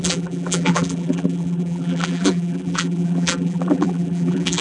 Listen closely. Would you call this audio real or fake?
fake